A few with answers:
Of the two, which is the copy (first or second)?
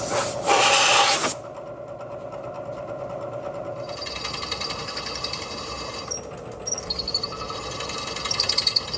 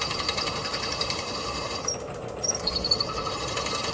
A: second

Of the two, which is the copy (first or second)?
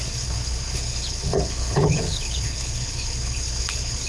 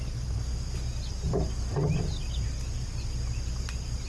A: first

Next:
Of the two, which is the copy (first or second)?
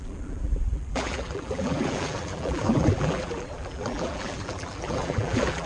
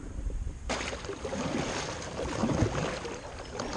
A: first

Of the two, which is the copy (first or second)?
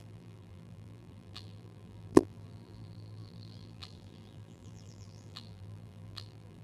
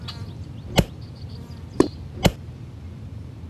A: first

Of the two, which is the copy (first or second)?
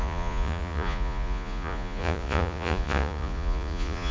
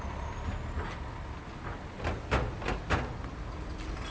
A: first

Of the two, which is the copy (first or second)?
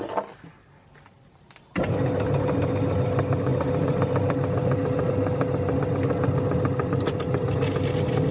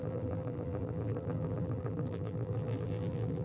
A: second